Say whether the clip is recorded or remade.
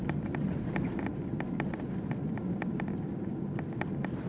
recorded